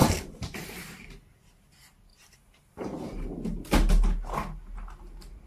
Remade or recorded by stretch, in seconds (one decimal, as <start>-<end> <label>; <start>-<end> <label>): 0.0-0.9 remade; 0.9-5.5 recorded